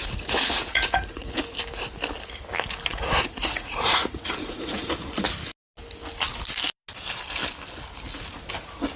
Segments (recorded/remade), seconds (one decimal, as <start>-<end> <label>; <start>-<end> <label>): 0.0-1.4 remade; 1.4-2.9 recorded; 2.9-4.9 remade; 4.9-9.0 recorded